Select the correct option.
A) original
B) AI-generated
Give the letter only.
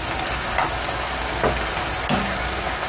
A